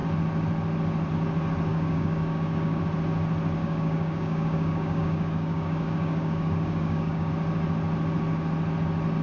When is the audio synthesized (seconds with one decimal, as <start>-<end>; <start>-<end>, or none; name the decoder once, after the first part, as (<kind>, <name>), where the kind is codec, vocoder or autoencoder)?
1.7-2.8 (codec, DAC); 3.6-7.3